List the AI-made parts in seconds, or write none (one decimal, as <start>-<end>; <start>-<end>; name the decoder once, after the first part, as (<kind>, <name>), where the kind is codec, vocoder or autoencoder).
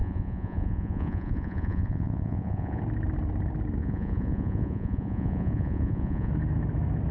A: 0.0-2.8 (vocoder, Vocos); 3.8-6.3